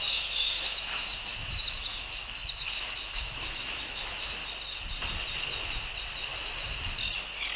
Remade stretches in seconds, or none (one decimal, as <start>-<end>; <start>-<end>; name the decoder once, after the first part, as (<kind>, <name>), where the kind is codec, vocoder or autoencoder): 0.0-4.4 (autoencoder, DAC-VAE)

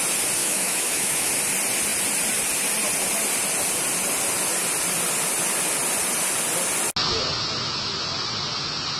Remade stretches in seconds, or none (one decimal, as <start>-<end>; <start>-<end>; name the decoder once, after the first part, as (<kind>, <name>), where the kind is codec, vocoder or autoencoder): 0.4-1.3 (autoencoder, DAC-VAE)

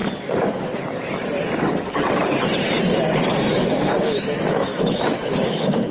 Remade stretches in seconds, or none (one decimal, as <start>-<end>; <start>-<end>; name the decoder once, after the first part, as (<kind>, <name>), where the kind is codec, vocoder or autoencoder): 3.5-5.9 (autoencoder, DAC-VAE)

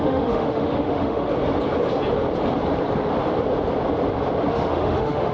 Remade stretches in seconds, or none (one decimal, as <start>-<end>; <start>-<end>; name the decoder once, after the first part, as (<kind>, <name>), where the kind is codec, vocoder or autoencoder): 0.0-1.3 (autoencoder, DAC-VAE); 4.5-5.3

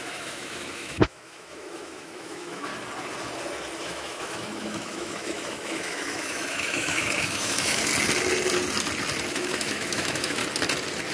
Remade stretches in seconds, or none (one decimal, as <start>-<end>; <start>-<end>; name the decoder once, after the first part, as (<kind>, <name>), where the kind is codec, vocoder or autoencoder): 0.0-2.7 (autoencoder, DAC-VAE); 3.8-7.9; 9.3-10.4